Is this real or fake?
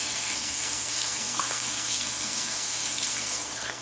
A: fake